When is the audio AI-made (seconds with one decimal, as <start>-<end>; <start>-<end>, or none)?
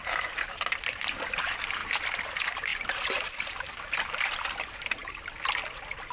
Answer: 0.0-6.1